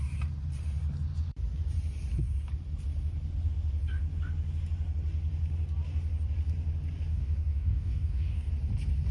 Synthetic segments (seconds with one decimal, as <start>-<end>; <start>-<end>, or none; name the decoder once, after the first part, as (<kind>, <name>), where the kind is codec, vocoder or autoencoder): 7.1-8.5 (codec, DAC)